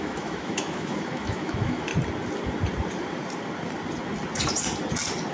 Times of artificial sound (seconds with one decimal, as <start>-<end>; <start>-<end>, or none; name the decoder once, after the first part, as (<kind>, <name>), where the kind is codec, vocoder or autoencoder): 0.0-1.9 (autoencoder, DAC-VAE)